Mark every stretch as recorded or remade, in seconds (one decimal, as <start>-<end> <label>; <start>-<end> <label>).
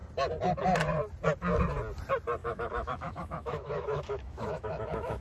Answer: 0.0-2.4 recorded; 2.4-5.2 remade